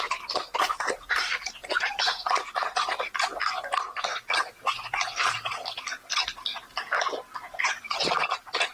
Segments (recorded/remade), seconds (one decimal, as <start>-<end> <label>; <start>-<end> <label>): 0.0-8.7 recorded